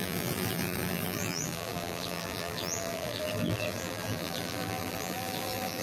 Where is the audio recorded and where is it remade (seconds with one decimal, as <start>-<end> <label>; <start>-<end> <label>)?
0.0-5.8 remade